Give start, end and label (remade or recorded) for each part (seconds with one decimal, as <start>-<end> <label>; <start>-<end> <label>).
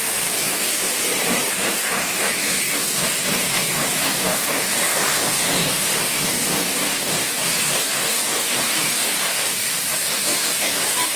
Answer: 0.0-1.0 remade; 1.0-1.5 recorded; 1.5-11.2 remade